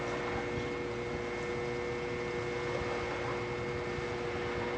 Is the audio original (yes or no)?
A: yes